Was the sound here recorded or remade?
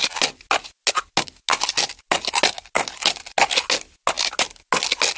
recorded